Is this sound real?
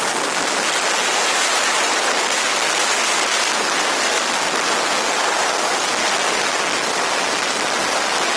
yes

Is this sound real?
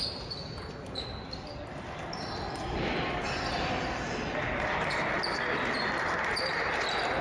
yes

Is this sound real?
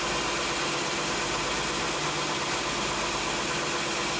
yes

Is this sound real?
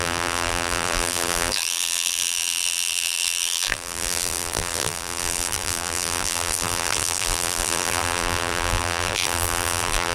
no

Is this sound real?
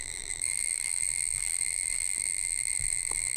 no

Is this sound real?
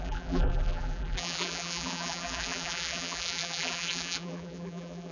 no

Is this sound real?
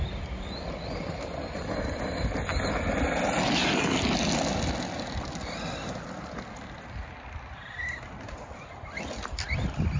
yes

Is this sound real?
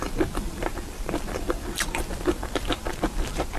no